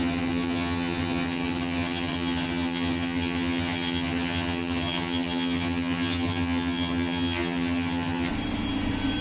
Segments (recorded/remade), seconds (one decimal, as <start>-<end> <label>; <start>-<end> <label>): 0.0-8.3 remade; 8.3-9.2 recorded